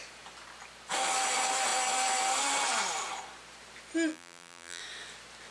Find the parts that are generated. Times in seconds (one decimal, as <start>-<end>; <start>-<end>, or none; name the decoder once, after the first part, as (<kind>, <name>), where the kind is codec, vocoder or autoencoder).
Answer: 4.1-4.8 (vocoder, BigVGAN v2)